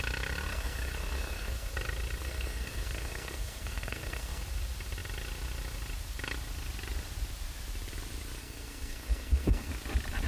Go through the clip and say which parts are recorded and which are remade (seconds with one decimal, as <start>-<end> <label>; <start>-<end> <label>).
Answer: 0.0-0.5 recorded; 0.5-1.7 remade; 1.7-2.2 recorded; 2.2-4.4 remade; 4.4-8.4 recorded; 8.4-9.7 remade; 9.7-10.3 recorded